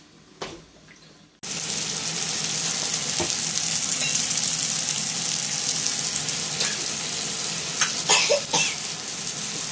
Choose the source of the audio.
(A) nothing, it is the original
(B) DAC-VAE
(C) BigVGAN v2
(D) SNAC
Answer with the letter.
A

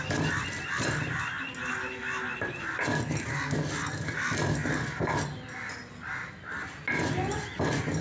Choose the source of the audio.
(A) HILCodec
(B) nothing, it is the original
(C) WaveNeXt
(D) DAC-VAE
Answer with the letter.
B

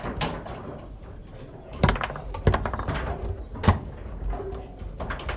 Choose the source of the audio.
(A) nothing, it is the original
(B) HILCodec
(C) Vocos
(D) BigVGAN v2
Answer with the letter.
A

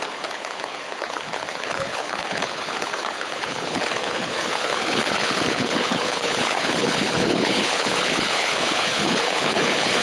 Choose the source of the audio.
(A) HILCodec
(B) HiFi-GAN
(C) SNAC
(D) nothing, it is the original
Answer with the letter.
A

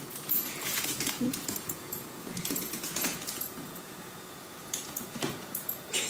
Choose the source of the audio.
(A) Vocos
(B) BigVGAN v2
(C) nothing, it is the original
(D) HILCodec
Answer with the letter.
A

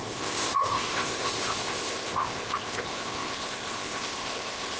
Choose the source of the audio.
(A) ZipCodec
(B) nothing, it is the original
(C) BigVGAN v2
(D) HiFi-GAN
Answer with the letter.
A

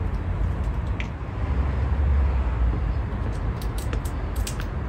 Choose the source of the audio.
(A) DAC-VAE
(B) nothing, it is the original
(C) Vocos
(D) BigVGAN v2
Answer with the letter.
B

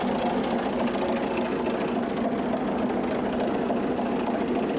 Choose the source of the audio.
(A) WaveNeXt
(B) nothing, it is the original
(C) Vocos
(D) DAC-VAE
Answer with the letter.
B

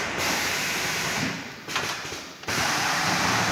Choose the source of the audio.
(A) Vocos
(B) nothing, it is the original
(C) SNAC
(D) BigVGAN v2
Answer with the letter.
D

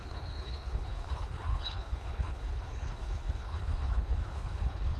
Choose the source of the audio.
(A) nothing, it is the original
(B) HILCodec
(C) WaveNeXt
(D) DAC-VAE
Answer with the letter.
B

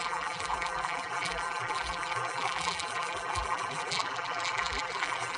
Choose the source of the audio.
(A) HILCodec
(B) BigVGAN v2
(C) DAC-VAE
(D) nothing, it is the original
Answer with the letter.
B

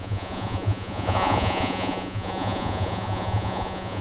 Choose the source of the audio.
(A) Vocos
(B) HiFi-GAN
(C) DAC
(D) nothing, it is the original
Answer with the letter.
A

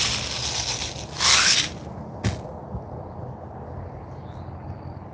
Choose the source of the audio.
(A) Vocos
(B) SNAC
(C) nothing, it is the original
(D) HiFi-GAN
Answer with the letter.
C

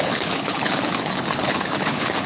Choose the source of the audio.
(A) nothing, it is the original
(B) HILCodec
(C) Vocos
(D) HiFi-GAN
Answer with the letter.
B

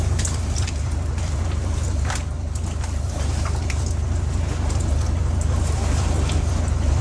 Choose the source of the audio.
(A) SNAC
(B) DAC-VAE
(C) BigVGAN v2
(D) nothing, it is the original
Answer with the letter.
D